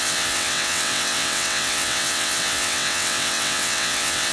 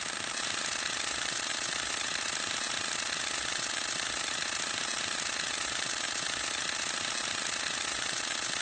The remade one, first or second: first